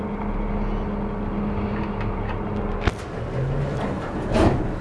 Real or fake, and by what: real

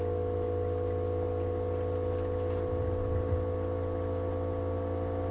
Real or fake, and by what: real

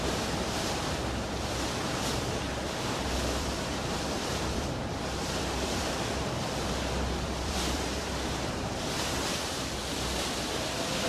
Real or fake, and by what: fake, vocoder, BigVGAN v2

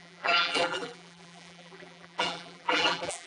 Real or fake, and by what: fake, vocoder, BigVGAN v2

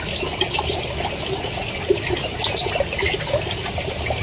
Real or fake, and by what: real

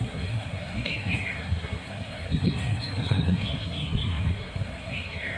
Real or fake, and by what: fake, codec, SNAC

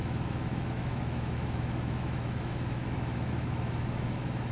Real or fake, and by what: fake, autoencoder, DAC-VAE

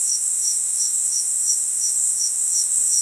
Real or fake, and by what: fake, autoencoder, DAC-VAE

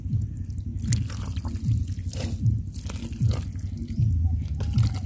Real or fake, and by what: real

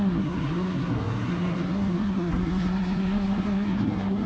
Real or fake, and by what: fake, codec, SNAC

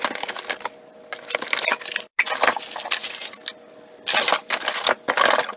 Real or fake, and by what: real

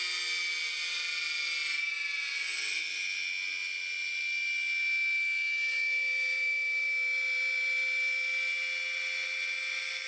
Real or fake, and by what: real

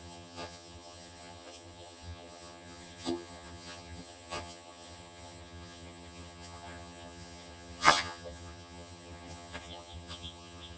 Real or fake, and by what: fake, vocoder, HiFi-GAN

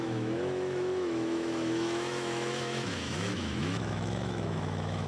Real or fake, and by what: fake, autoencoder, DAC-VAE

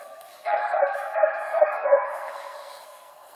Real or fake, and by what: fake, codec, SNAC